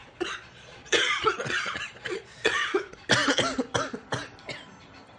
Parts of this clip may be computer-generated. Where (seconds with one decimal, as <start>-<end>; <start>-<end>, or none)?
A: 0.0-2.9